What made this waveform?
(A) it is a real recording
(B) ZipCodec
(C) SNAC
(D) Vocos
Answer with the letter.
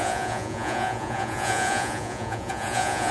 D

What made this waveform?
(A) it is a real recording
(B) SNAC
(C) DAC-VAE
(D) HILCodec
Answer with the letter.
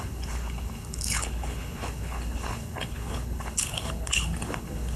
D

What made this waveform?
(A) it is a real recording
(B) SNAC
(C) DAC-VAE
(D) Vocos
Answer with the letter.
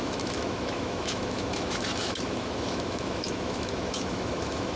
C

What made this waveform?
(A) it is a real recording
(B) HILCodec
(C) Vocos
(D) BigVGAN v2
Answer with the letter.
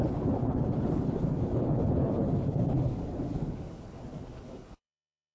B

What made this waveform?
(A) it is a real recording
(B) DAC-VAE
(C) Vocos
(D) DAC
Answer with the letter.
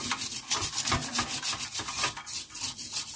A